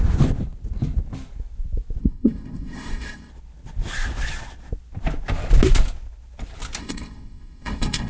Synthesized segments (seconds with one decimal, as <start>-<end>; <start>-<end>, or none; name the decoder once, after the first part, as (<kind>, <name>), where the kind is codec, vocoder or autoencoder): 2.0-3.3 (codec, SNAC); 6.8-8.1